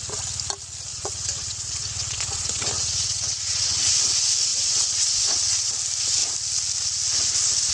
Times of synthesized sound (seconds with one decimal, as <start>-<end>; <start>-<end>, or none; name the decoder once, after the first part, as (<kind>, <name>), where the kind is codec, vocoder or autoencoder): 0.9-3.9 (vocoder, WaveNeXt); 4.5-5.7